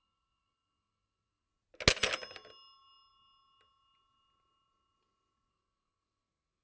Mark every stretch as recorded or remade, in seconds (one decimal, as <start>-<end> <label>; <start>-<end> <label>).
0.0-1.5 remade; 1.5-5.5 recorded; 5.5-6.6 remade